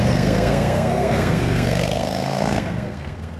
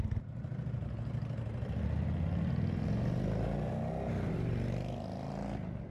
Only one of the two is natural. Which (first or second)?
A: second